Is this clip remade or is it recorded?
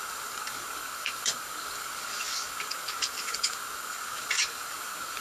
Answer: remade